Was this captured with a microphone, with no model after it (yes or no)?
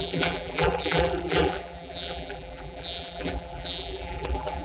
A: no